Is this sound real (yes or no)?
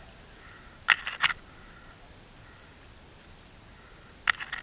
yes